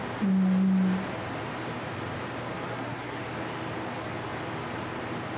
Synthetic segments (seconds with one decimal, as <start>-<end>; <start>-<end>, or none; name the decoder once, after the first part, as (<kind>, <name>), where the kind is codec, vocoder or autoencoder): 2.5-3.2 (codec, SNAC)